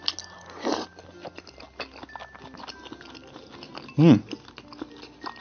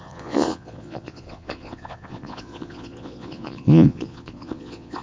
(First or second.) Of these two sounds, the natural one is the first